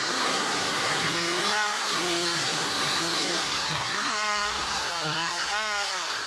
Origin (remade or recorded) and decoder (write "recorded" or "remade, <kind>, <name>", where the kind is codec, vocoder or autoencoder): remade, codec, SNAC